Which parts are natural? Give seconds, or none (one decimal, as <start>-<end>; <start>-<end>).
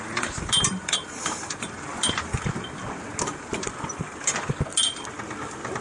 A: 2.3-5.8